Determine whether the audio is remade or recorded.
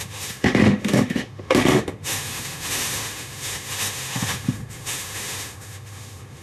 remade